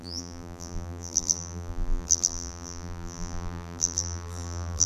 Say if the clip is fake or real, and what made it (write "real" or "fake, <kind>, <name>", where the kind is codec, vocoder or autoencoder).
fake, vocoder, BigVGAN v2